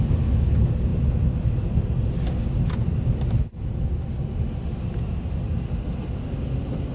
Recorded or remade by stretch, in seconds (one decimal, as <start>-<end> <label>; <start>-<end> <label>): 0.0-6.9 recorded